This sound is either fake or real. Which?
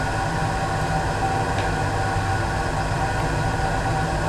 real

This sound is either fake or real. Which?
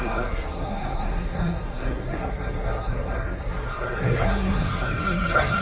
fake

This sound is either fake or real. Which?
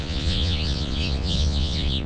fake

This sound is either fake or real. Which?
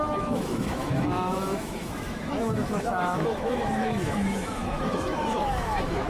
fake